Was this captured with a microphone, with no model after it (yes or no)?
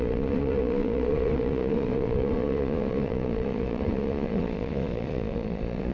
no